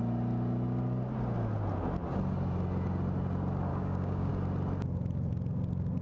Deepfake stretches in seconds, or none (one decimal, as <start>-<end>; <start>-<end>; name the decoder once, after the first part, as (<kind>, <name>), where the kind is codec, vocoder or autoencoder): 3.7-4.3 (codec, DAC)